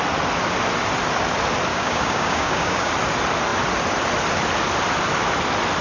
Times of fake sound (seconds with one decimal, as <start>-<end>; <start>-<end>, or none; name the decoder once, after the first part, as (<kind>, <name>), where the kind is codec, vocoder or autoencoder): 1.7-2.9 (codec, DAC)